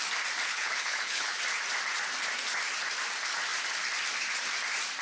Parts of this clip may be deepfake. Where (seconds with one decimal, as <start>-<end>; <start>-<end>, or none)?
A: 0.5-1.4